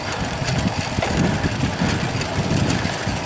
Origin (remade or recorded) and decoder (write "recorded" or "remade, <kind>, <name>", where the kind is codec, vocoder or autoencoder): recorded